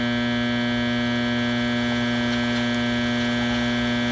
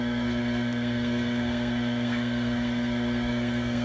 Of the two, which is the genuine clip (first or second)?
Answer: first